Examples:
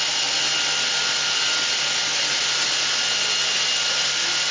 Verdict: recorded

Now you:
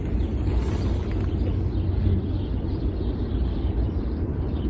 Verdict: recorded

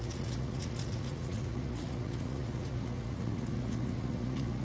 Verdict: remade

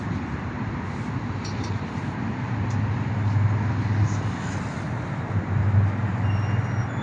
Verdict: recorded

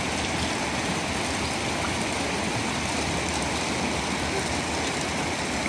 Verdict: recorded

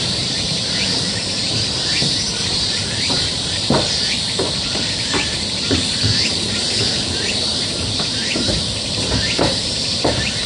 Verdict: remade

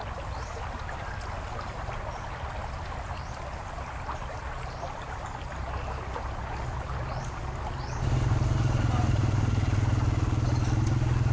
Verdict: recorded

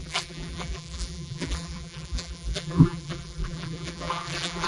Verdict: remade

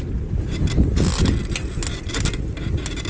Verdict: recorded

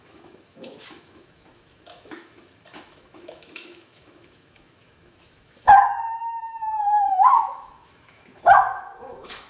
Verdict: remade